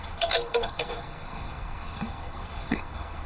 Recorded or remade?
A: remade